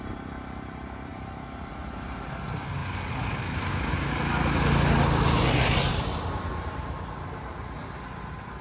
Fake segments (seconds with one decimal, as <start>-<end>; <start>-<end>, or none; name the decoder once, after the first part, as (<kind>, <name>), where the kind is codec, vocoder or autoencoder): none